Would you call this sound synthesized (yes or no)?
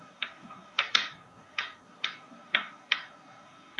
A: yes